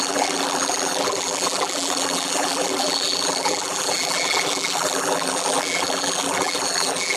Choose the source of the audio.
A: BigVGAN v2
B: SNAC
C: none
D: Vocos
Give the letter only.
A